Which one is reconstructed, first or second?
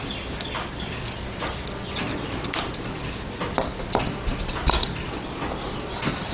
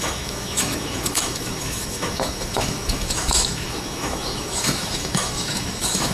second